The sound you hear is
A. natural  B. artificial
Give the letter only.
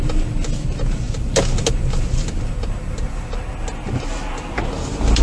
A